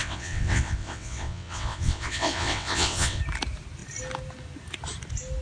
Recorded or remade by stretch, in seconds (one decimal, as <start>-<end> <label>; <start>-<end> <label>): 0.0-3.2 remade; 3.2-5.4 recorded

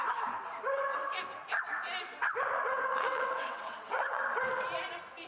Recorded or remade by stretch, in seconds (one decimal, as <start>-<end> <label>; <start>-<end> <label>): 0.0-2.9 recorded; 2.9-4.2 remade; 4.2-5.3 recorded

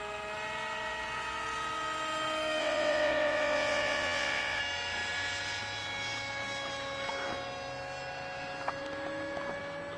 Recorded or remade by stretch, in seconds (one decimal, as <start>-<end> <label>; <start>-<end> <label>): 0.0-2.6 recorded; 2.6-4.6 remade; 4.6-10.0 recorded

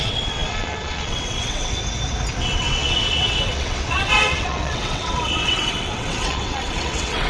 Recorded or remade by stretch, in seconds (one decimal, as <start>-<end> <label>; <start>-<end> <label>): 0.0-1.8 remade; 1.8-2.4 recorded; 2.4-7.3 remade